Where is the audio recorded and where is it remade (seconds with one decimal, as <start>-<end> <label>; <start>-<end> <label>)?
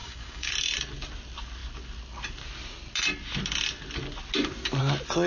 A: 0.0-0.5 remade; 0.5-5.3 recorded